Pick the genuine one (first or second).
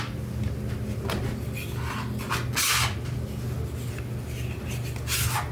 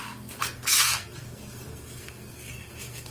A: first